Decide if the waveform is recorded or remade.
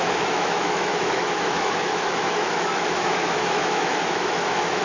remade